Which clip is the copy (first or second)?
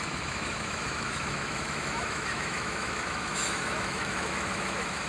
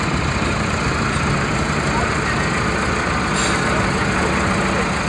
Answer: first